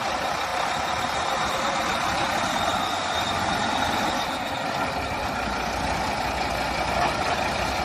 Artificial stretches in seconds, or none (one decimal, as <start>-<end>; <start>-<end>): none